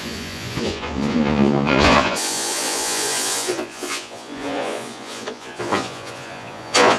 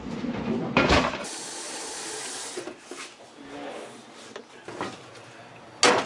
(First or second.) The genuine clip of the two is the second